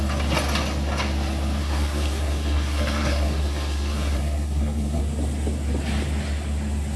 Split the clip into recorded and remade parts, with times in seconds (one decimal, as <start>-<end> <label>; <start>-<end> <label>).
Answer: 0.0-1.6 recorded; 1.6-5.0 remade; 5.0-7.0 recorded